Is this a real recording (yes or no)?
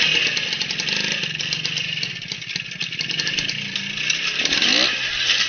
yes